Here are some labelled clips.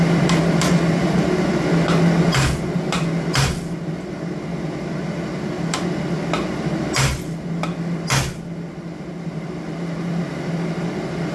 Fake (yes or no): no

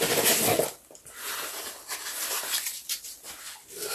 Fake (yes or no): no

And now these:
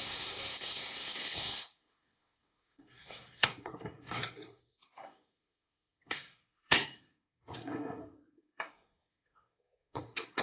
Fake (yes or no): yes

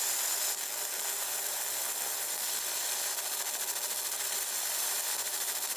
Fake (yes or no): no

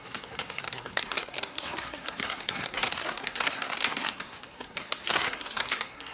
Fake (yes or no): yes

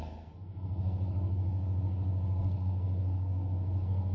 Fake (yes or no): yes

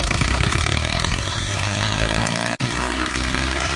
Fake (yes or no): yes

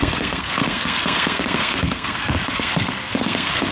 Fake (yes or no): yes